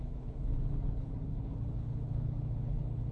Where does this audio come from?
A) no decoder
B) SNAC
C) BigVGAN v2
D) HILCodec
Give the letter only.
D